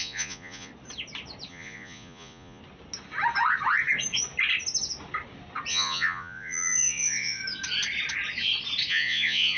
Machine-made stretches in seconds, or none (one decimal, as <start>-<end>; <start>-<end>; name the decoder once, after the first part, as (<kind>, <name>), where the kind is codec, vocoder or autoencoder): 0.0-0.7 (vocoder, Vocos); 1.5-2.6; 5.7-7.4; 8.9-9.6